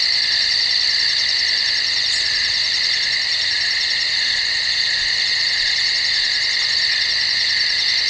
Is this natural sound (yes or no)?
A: yes